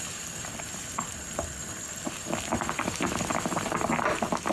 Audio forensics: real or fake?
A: real